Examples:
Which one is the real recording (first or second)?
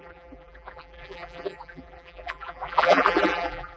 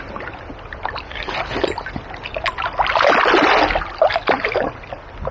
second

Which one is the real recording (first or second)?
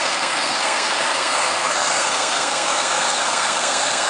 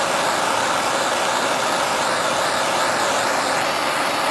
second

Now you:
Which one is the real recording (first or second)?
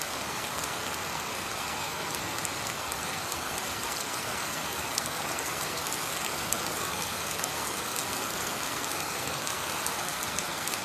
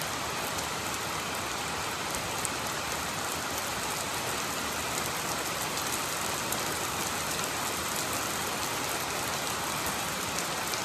second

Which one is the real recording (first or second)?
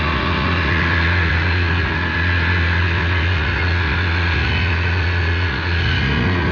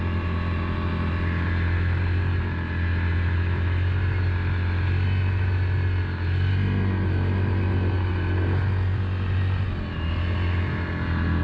second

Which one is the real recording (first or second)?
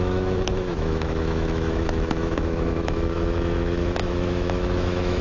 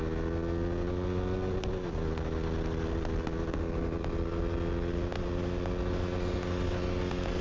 second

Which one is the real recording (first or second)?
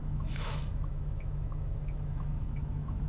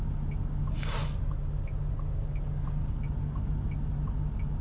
second